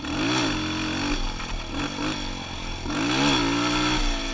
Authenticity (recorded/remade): recorded